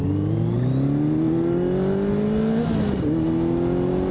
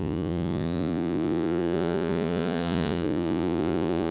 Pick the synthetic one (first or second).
second